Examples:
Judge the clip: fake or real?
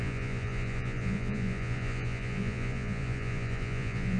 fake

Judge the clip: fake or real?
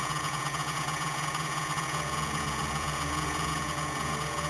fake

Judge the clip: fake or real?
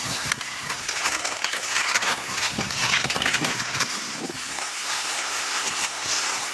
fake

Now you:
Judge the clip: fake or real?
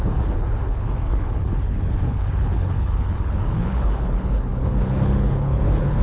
fake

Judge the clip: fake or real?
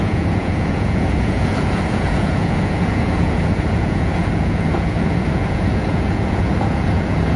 fake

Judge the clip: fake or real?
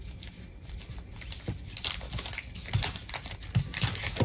real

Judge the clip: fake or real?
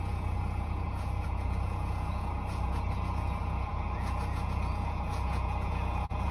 fake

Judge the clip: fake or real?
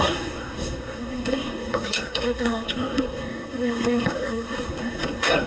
fake